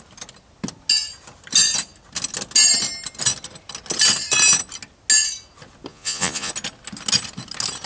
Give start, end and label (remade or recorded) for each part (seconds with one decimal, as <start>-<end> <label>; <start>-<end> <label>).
0.0-5.9 recorded; 5.9-6.5 remade; 6.5-7.9 recorded